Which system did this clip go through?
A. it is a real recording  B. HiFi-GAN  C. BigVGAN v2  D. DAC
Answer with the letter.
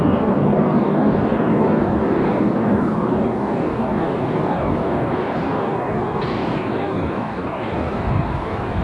D